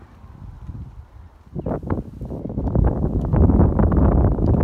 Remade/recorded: recorded